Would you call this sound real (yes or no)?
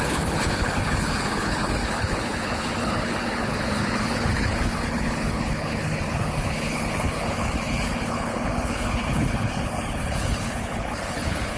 no